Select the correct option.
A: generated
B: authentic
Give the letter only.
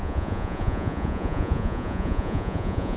A